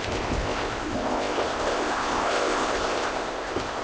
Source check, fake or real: fake